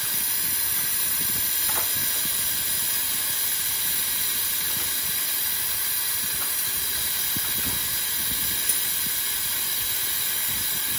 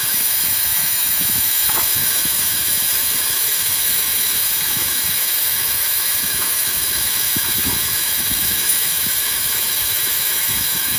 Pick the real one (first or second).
first